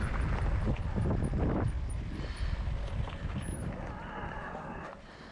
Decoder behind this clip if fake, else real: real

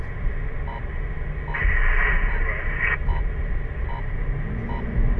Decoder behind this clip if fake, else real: real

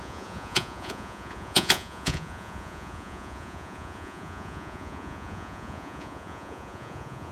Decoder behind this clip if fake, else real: fake, vocoder, Vocos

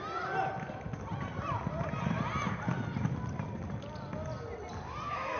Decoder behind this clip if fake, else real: real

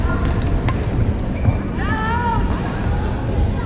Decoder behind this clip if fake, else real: real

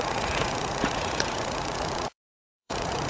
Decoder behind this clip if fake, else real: fake, vocoder, Vocos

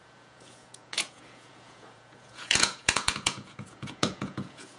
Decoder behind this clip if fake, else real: fake, vocoder, Vocos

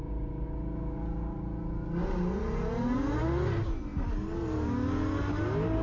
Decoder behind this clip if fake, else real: real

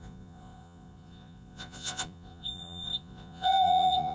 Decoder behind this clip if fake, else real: fake, vocoder, Vocos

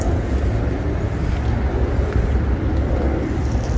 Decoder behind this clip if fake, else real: real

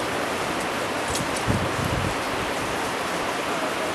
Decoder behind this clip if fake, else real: real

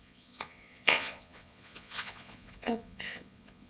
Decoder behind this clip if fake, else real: fake, vocoder, Vocos